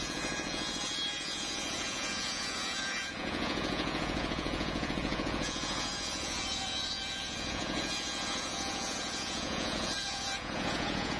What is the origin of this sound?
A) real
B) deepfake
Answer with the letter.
B